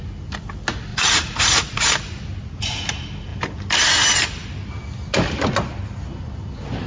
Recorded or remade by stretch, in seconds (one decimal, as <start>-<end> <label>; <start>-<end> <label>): 0.0-0.9 recorded; 0.9-1.9 remade; 1.9-6.9 recorded